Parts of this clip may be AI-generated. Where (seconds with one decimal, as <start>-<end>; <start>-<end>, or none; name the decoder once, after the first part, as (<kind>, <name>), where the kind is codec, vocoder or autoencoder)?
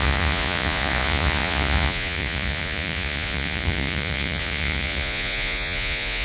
0.0-6.2 (vocoder, Vocos)